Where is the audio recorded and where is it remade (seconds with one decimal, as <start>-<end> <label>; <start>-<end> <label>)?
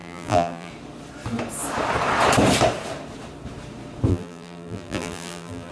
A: 0.0-0.7 remade; 0.7-4.1 recorded; 4.1-5.7 remade